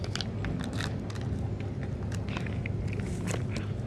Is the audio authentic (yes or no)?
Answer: yes